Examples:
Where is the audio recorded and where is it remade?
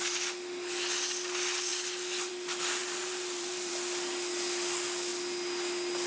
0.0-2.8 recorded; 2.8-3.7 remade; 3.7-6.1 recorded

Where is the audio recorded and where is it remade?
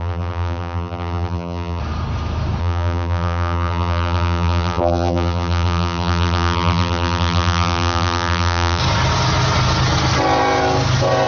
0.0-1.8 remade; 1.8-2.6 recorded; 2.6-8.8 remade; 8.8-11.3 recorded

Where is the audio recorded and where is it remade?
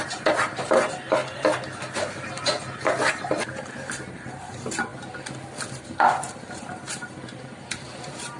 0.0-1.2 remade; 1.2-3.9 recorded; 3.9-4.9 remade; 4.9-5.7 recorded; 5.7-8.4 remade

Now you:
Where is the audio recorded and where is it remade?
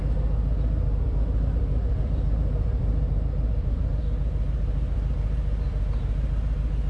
0.0-1.8 recorded; 1.8-4.0 remade; 4.0-6.9 recorded